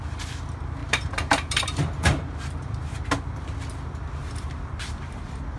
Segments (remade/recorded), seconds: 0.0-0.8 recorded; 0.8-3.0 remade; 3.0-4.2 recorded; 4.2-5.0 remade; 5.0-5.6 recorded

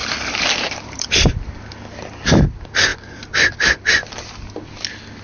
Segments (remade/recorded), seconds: 0.0-1.1 remade; 1.1-2.9 recorded; 2.9-4.3 remade; 4.3-5.2 recorded